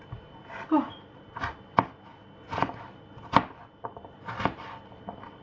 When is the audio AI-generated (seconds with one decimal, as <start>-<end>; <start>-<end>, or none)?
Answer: none